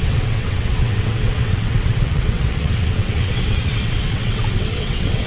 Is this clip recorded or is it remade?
remade